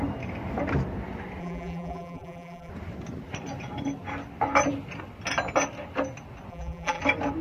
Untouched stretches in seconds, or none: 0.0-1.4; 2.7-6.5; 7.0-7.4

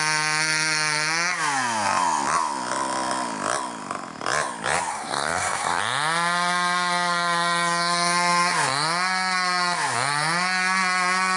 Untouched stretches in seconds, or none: 0.0-4.9; 5.8-11.4

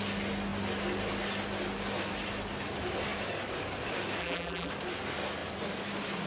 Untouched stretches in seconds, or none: 0.0-4.2; 4.7-6.3

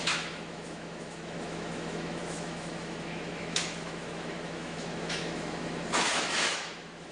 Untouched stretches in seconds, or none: none

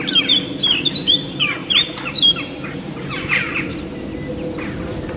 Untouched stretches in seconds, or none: 0.0-1.6; 3.8-5.2

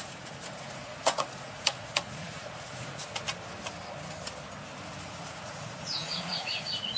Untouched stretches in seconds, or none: 3.0-5.0

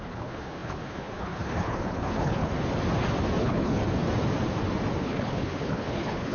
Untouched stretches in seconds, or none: 2.5-3.4; 3.8-5.0